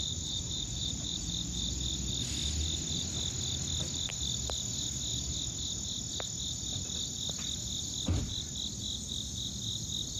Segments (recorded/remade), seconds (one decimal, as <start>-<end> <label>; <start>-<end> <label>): 0.0-1.2 remade; 1.2-10.2 recorded